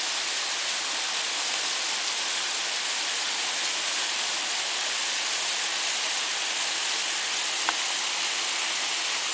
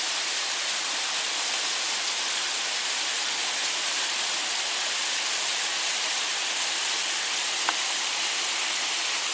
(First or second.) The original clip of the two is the first